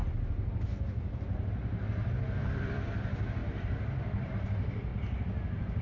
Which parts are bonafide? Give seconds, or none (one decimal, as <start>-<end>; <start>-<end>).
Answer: 0.0-2.1; 4.9-5.8

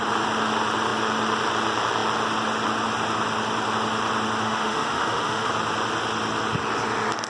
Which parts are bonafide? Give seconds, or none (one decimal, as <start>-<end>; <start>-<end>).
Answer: 0.0-4.4; 5.5-7.3